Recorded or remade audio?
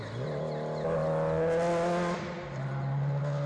recorded